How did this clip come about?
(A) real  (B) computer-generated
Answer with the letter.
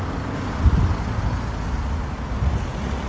A